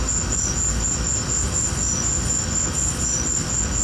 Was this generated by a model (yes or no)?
no